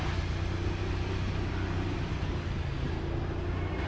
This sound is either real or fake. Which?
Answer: real